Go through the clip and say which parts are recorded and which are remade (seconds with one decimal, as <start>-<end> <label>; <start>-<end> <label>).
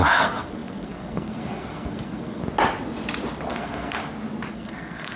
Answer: 0.0-2.4 remade; 2.4-3.5 recorded; 3.5-4.0 remade; 4.0-4.5 recorded; 4.5-5.2 remade